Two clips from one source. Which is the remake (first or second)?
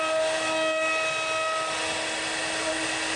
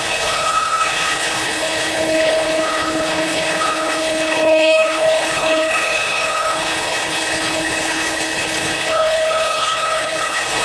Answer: second